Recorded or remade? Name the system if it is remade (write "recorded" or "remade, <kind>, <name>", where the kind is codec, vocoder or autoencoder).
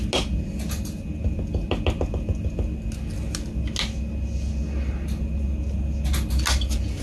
recorded